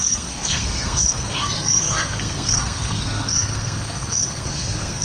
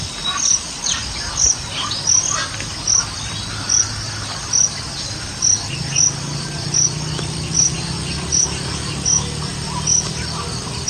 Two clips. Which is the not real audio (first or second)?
first